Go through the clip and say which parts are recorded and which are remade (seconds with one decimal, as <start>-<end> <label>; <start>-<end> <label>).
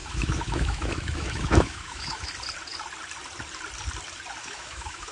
0.0-2.3 remade; 2.3-4.4 recorded; 4.4-5.1 remade